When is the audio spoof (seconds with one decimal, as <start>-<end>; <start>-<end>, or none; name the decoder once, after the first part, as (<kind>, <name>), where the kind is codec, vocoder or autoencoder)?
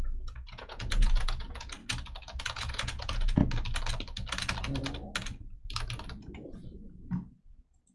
0.0-1.8 (vocoder, Vocos); 2.4-3.4; 7.5-7.9